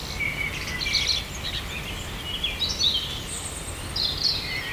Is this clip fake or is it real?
real